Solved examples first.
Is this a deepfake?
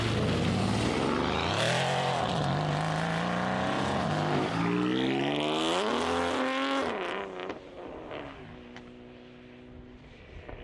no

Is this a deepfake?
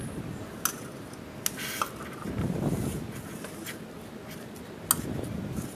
no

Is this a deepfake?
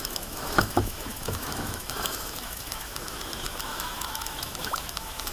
yes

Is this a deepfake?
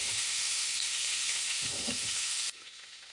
yes